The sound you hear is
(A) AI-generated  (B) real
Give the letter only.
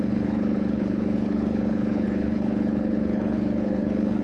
A